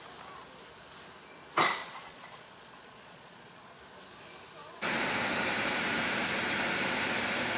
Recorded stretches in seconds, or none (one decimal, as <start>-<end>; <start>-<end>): 0.0-1.8; 3.8-7.6

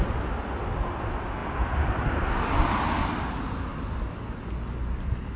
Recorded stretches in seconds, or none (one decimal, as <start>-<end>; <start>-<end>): 0.0-5.4

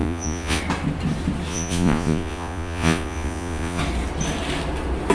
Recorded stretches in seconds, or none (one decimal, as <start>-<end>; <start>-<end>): 0.6-1.5; 3.8-5.1

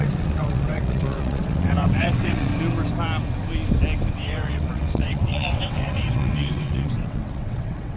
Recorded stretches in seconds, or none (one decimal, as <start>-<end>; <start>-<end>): 2.5-4.1

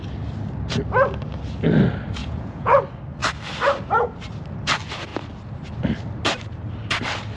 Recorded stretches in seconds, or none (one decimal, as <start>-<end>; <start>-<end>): 0.0-2.2; 2.8-7.4

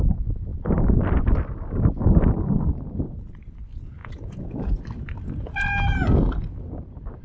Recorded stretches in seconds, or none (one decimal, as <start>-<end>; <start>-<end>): 0.0-4.0; 4.8-7.2